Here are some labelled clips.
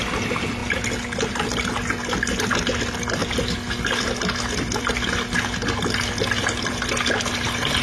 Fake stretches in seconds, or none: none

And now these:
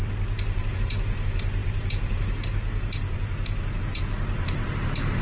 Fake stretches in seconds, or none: 0.0-5.2 (vocoder, BigVGAN v2)

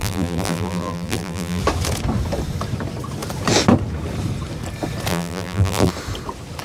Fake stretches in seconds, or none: 0.0-1.6 (vocoder, BigVGAN v2); 5.1-5.9